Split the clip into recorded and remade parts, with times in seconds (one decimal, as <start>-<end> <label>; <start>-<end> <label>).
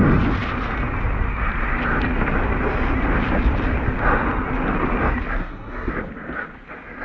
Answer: 0.0-5.4 recorded; 5.4-5.9 remade; 5.9-7.0 recorded